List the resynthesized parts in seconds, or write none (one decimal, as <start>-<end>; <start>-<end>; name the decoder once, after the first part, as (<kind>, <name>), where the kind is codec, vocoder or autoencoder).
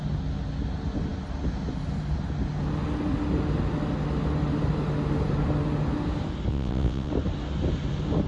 6.5-7.1 (vocoder, WaveNeXt)